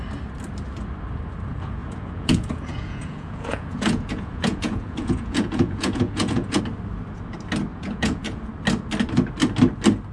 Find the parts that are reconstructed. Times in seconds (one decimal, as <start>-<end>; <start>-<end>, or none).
1.8-6.6; 7.7-8.5